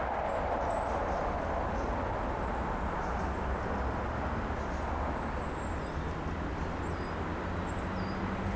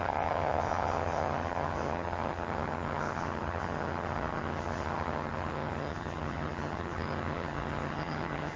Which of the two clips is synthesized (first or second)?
second